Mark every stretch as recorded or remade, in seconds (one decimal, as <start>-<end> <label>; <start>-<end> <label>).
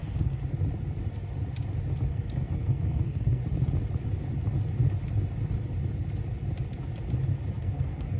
0.0-0.4 remade; 0.4-2.1 recorded; 2.1-3.4 remade; 3.4-7.6 recorded; 7.6-8.2 remade